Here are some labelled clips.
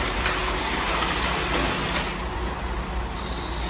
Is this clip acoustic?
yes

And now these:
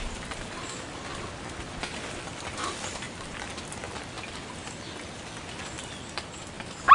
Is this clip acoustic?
yes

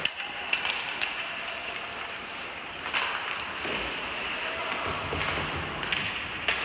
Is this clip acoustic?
yes